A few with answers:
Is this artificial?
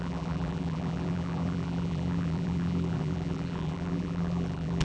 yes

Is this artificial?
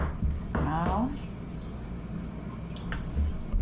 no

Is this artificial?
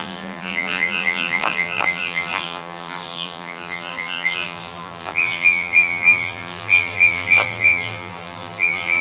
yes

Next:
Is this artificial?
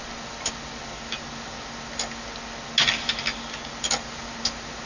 no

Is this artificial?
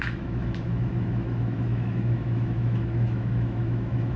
yes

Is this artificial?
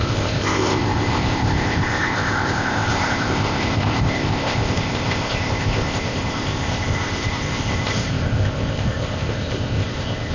yes